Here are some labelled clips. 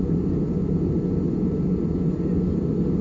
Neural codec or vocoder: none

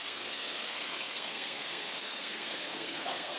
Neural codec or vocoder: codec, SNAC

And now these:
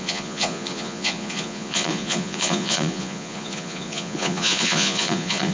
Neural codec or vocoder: vocoder, Vocos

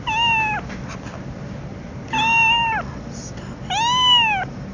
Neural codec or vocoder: none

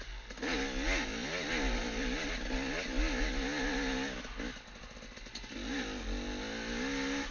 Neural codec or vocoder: none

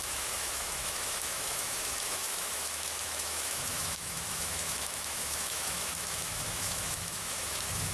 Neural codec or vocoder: autoencoder, DAC-VAE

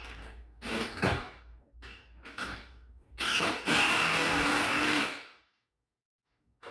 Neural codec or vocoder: codec, DAC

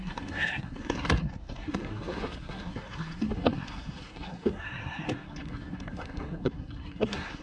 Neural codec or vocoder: codec, SNAC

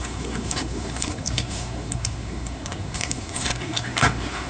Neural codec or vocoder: codec, SNAC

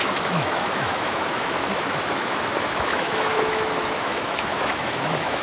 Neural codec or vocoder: autoencoder, DAC-VAE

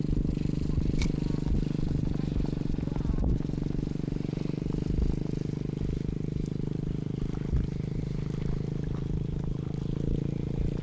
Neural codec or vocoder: none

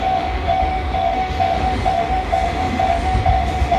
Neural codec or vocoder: autoencoder, DAC-VAE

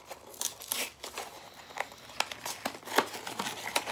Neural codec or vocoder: none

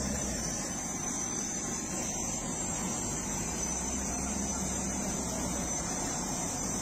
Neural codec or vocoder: vocoder, BigVGAN v2